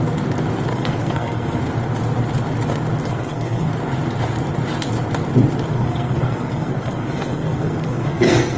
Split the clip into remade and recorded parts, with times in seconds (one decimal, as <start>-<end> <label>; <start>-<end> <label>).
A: 0.0-0.7 recorded; 0.7-1.6 remade; 1.6-3.1 recorded; 3.1-3.7 remade; 3.7-5.7 recorded; 5.7-8.6 remade